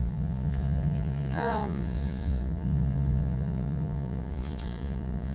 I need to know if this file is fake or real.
fake